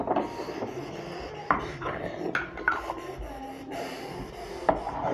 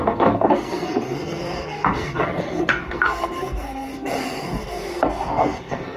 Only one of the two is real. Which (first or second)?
first